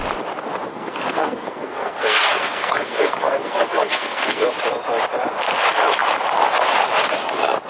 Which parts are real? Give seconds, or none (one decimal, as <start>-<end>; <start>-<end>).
0.0-0.7; 4.5-7.7